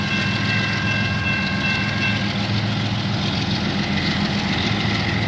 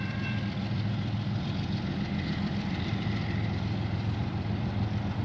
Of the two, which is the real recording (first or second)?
first